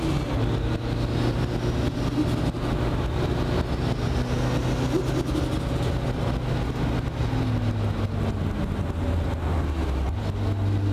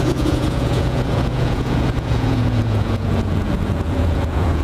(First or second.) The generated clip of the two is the second